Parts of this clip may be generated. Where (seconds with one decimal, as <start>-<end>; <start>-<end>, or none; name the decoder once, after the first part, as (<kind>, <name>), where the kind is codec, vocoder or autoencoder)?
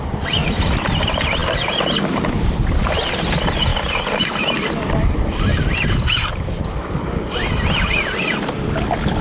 0.0-9.2 (vocoder, BigVGAN v2)